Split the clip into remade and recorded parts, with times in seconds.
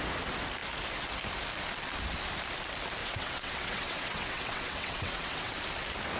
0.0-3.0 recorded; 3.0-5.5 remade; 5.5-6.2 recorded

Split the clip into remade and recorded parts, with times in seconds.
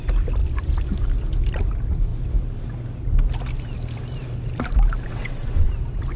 0.0-5.1 recorded; 5.1-5.7 remade; 5.7-6.2 recorded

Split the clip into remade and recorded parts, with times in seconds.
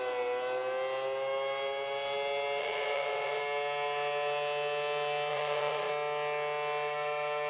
0.0-2.6 recorded; 2.6-3.4 remade; 3.4-5.3 recorded; 5.3-5.9 remade; 5.9-7.5 recorded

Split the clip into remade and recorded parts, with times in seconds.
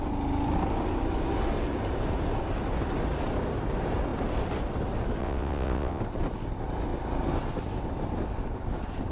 0.0-5.2 recorded; 5.2-6.0 remade; 6.0-9.1 recorded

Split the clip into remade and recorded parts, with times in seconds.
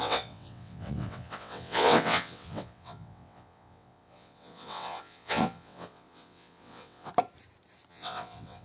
0.0-7.1 remade; 7.1-7.9 recorded; 7.9-8.6 remade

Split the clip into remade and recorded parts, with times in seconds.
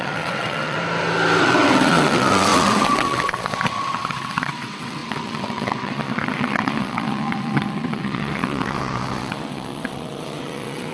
0.0-0.8 remade; 0.8-1.4 recorded; 1.4-10.9 remade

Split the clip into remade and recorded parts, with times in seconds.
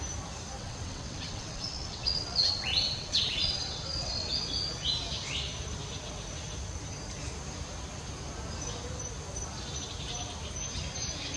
0.0-0.6 recorded; 0.6-4.3 remade; 4.3-11.4 recorded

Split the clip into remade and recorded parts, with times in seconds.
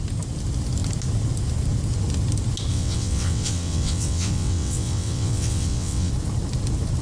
0.0-2.7 recorded; 2.7-6.1 remade; 6.1-7.0 recorded